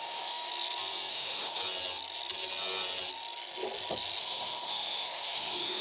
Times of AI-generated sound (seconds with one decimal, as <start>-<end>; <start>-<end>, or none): 0.0-0.5; 1.1-1.6; 4.2-5.8